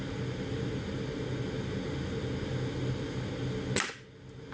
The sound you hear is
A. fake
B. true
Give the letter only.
B